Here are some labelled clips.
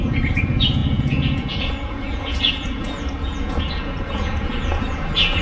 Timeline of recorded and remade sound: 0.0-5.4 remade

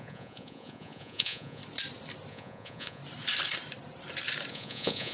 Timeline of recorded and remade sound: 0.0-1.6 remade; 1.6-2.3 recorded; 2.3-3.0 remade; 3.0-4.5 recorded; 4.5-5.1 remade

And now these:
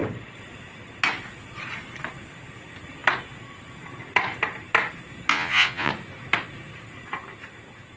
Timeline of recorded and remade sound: 0.0-5.3 recorded; 5.3-5.9 remade; 5.9-8.0 recorded

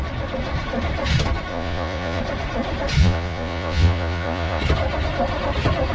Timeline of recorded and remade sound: 0.0-1.5 recorded; 1.5-2.2 remade; 2.2-3.0 recorded; 3.0-4.6 remade; 4.6-5.9 recorded

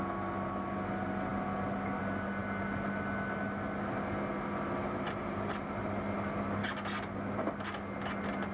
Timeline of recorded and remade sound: 0.0-8.5 recorded